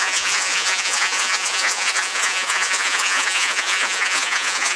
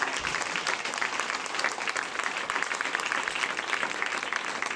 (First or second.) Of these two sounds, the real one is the second